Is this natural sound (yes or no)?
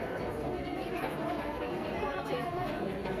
no